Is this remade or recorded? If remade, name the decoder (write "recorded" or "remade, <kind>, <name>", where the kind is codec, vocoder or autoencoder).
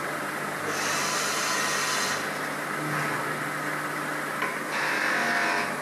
recorded